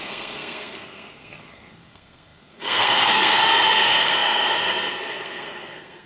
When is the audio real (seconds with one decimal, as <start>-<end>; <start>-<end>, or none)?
none